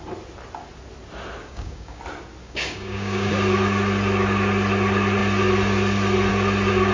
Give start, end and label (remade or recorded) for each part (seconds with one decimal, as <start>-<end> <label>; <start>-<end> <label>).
0.0-1.4 recorded; 1.4-2.0 remade; 2.0-2.4 recorded; 2.4-3.3 remade; 3.3-6.9 recorded